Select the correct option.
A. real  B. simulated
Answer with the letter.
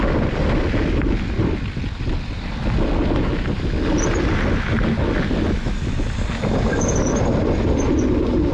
A